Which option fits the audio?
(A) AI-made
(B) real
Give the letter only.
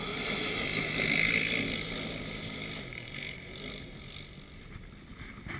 B